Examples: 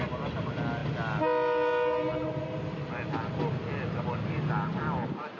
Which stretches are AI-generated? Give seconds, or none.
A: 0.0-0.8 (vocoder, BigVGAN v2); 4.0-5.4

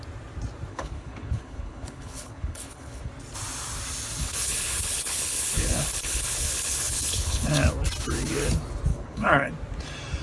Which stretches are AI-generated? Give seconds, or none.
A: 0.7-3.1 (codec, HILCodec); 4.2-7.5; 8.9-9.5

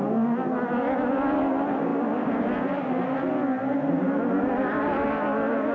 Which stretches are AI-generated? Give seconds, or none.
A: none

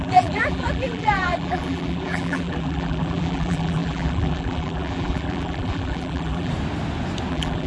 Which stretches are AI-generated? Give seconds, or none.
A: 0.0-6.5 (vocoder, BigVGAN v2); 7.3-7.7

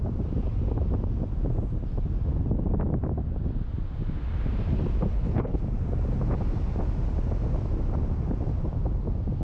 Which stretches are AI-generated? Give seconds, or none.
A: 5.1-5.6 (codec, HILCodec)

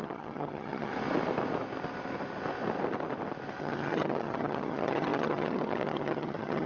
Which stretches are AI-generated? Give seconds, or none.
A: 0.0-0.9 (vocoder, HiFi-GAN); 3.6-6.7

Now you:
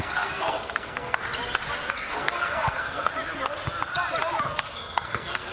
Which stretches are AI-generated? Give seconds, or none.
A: 0.0-1.2 (codec, SNAC); 1.9-3.1; 4.4-5.5